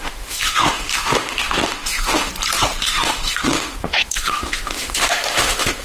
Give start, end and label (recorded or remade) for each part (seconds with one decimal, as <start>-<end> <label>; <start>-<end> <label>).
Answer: 0.0-2.3 remade; 2.3-2.8 recorded; 2.8-5.8 remade